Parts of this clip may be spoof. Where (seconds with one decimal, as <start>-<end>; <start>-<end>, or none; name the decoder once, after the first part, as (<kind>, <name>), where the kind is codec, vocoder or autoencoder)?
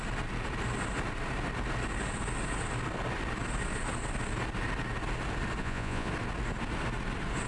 5.6-6.1 (vocoder, Vocos)